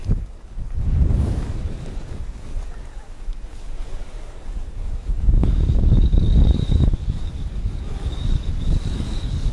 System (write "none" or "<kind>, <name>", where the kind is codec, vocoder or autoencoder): codec, DAC